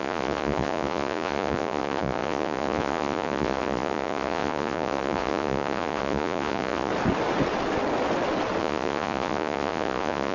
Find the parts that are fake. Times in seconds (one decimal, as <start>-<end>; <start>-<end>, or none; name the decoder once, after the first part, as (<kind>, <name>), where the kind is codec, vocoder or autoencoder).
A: 0.0-6.9 (vocoder, Vocos); 8.6-10.3